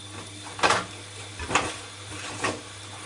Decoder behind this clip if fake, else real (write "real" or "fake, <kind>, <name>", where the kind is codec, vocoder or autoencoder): real